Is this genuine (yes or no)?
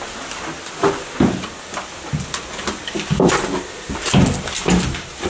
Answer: yes